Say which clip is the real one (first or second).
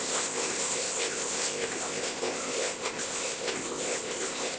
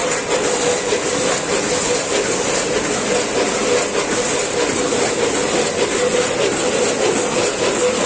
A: second